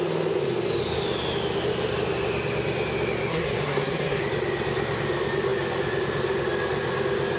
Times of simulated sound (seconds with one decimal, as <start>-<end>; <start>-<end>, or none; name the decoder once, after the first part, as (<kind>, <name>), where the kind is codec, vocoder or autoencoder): 3.3-4.2 (codec, SNAC)